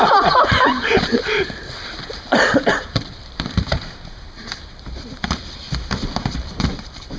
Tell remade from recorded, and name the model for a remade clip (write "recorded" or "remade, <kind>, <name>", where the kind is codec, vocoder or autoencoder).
remade, vocoder, BigVGAN v2